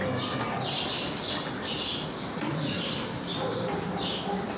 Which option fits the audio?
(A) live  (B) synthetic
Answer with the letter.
A